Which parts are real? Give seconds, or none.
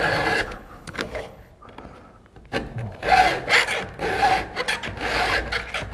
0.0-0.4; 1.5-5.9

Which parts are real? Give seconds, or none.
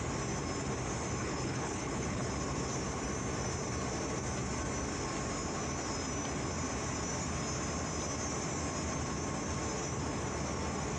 0.0-1.2; 2.3-11.0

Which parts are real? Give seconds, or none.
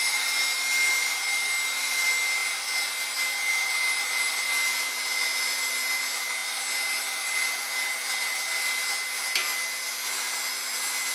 0.0-11.1